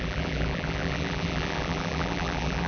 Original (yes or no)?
no